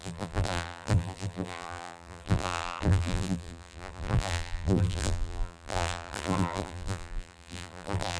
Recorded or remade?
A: remade